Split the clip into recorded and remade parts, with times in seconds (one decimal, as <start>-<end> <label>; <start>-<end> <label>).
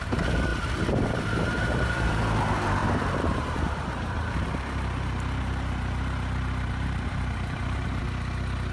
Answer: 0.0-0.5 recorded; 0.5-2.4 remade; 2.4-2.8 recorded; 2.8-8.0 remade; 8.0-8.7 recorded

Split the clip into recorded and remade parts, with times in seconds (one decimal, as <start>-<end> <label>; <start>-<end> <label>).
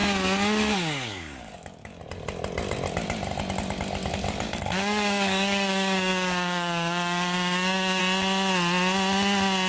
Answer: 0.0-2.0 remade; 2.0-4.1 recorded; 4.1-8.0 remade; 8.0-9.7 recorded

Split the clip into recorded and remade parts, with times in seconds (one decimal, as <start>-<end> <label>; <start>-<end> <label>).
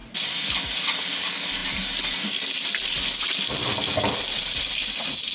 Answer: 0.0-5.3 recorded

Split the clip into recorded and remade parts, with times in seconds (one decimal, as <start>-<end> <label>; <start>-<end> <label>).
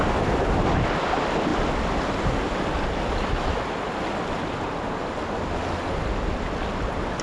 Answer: 0.0-7.2 recorded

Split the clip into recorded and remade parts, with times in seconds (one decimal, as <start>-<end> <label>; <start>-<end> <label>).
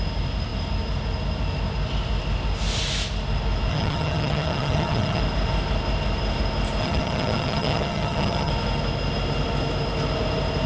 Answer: 0.0-3.7 recorded; 3.7-5.2 remade; 5.2-6.8 recorded; 6.8-8.5 remade; 8.5-10.7 recorded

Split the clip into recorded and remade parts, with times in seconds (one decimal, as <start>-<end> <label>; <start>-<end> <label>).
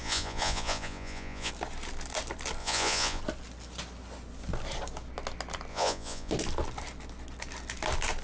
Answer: 0.0-1.5 remade; 1.5-2.6 recorded; 2.6-3.2 remade; 3.2-5.7 recorded; 5.7-6.3 remade; 6.3-8.2 recorded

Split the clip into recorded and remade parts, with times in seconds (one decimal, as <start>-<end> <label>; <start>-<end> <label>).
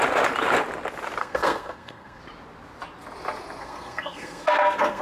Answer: 0.0-1.2 recorded; 1.2-2.2 remade; 2.2-3.6 recorded; 3.6-5.0 remade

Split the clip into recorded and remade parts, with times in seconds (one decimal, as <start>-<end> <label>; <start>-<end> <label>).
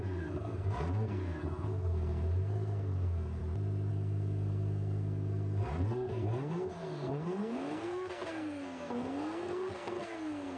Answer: 0.0-3.4 remade; 3.4-3.9 recorded; 3.9-10.6 remade